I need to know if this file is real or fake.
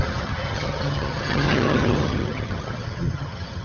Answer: fake